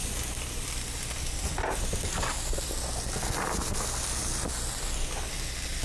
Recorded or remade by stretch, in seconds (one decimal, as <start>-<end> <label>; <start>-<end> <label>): 0.0-2.3 remade; 2.3-5.8 recorded